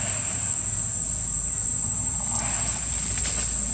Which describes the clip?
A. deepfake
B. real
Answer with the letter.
B